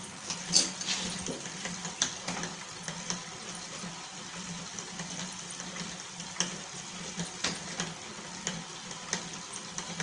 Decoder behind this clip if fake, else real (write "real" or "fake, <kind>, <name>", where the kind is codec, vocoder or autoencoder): real